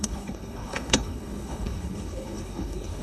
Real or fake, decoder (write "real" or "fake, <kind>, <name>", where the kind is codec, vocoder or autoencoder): fake, codec, HILCodec